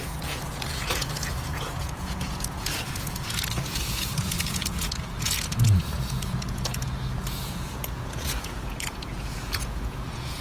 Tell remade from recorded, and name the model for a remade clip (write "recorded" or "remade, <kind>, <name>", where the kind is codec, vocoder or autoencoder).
remade, vocoder, Vocos